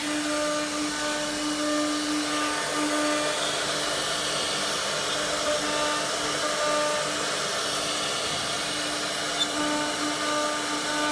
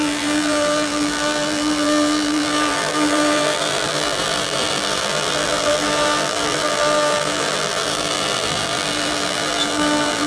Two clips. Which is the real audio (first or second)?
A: first